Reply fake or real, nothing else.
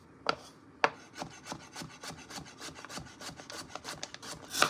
real